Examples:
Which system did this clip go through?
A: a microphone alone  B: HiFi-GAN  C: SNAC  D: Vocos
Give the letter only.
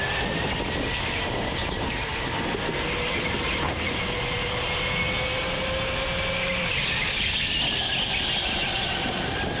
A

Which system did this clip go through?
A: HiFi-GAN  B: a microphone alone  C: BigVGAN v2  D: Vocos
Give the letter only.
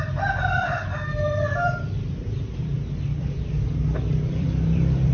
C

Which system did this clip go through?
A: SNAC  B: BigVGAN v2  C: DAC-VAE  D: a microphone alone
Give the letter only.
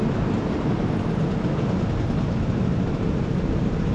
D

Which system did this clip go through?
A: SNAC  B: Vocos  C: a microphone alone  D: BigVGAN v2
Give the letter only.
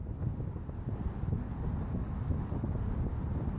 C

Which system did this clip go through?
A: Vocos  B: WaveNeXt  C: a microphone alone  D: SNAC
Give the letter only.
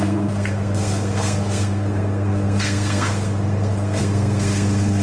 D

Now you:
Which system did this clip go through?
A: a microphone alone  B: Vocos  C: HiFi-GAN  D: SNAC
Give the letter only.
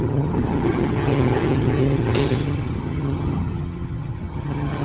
C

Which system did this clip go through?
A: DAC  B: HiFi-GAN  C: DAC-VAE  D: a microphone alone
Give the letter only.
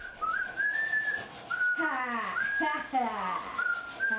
D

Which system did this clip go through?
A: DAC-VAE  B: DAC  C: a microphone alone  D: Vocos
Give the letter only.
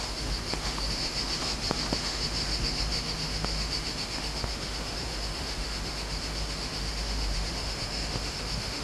A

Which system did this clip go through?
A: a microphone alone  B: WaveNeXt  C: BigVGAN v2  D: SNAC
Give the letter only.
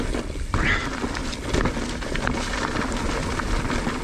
A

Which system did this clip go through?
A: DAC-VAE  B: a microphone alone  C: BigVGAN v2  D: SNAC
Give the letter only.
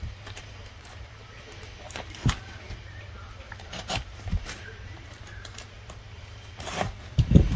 C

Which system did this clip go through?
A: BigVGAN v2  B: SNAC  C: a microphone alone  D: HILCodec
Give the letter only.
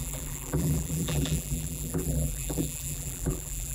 A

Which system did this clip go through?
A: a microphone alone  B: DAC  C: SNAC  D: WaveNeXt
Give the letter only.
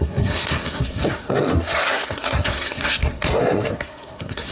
C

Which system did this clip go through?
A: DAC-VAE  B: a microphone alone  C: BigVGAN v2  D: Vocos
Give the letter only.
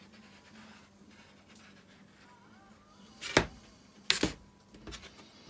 B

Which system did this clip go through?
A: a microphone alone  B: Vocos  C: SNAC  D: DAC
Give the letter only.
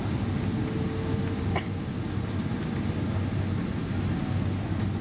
A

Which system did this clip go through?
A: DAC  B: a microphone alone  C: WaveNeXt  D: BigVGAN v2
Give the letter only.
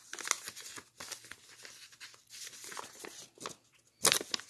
B